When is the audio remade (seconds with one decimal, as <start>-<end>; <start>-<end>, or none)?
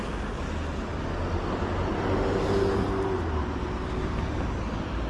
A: none